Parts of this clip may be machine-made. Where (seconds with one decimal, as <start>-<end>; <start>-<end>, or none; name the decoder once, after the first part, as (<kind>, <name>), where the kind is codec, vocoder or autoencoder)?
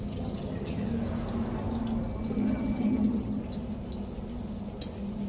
0.0-0.9 (vocoder, HiFi-GAN); 2.3-3.4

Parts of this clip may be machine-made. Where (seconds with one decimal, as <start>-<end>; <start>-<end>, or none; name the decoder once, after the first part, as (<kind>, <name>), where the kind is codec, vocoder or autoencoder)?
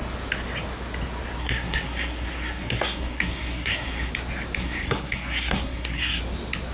1.4-4.1 (codec, SNAC); 4.6-6.2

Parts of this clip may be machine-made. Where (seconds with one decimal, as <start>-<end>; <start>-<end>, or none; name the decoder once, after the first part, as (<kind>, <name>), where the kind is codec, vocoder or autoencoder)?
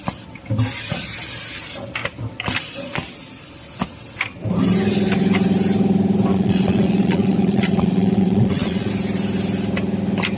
6.3-8.9 (vocoder, Vocos)